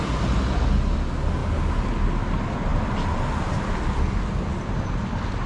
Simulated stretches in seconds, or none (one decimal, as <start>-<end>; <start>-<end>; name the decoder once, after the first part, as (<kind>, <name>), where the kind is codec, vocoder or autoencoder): none